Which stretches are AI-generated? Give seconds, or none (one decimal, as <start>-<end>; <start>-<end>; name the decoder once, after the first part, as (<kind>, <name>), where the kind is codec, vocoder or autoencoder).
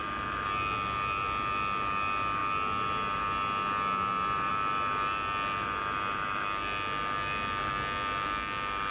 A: none